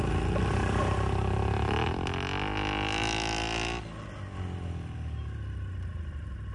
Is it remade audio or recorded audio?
recorded